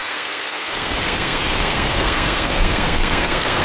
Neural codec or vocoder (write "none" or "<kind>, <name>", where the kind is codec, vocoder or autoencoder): codec, SNAC